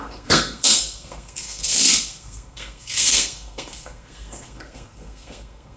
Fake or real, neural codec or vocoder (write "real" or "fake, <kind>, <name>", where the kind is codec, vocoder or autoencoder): fake, codec, SNAC